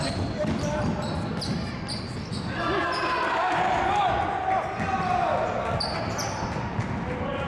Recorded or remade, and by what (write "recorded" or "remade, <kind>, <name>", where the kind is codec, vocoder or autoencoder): recorded